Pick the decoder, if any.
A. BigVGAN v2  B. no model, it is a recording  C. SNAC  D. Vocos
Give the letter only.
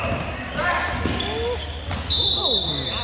B